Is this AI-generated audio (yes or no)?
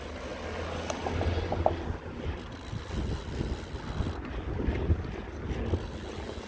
no